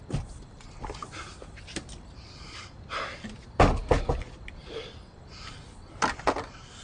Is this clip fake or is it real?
real